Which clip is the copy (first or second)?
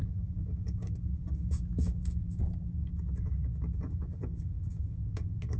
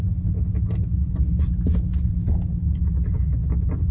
first